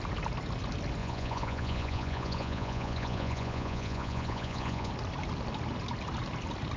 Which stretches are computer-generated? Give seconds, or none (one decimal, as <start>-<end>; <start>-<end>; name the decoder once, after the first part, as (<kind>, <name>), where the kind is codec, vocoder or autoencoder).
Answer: 1.0-4.9 (vocoder, Vocos)